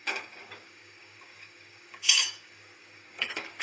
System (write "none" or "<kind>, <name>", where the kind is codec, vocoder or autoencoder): codec, DAC